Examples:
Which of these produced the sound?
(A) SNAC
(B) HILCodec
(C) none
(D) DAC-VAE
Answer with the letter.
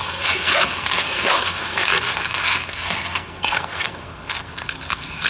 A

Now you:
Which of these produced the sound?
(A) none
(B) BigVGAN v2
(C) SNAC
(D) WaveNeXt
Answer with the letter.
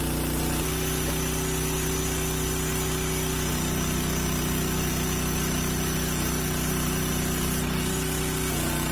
A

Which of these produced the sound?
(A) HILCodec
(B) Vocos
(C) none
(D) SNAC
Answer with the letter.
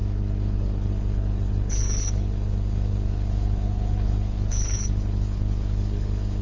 A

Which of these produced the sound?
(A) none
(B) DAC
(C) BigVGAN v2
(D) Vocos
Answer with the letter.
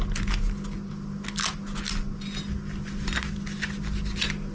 A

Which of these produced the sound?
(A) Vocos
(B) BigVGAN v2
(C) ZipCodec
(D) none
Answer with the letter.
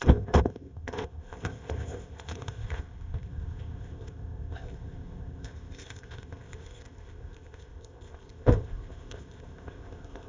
C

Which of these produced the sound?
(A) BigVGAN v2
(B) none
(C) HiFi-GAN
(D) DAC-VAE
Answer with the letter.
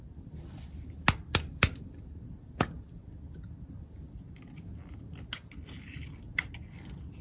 B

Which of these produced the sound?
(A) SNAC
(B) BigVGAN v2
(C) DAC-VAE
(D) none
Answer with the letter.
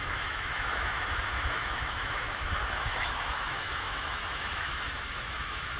C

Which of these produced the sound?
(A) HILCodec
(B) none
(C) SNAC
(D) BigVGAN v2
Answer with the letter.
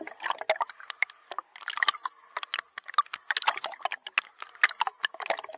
B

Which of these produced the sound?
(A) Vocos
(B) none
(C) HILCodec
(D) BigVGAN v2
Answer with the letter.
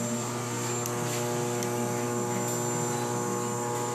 B